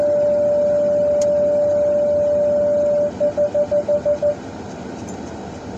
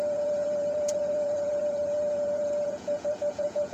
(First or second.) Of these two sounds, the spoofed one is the second